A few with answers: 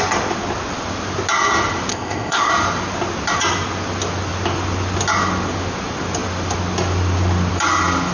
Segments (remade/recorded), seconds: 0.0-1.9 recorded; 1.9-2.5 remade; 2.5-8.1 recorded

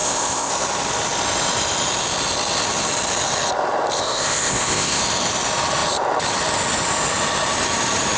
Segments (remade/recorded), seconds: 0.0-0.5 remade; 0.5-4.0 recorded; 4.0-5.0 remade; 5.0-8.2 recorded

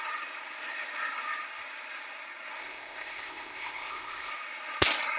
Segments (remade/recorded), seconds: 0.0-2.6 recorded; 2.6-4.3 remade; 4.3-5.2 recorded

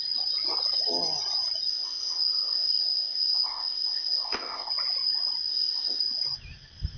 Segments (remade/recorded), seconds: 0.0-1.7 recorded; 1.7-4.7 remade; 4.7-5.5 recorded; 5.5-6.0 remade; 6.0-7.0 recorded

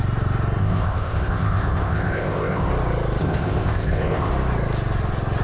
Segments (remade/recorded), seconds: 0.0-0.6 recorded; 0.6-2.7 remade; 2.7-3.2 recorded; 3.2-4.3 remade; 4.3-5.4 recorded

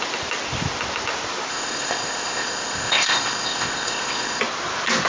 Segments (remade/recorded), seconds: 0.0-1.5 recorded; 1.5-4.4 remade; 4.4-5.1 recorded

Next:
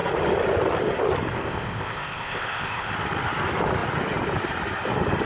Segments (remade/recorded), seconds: 0.0-1.4 recorded; 1.4-2.9 remade; 2.9-5.3 recorded